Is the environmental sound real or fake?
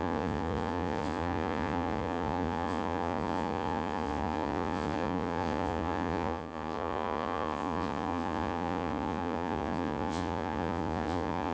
fake